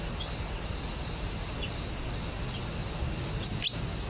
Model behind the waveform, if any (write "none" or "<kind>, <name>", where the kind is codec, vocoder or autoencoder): none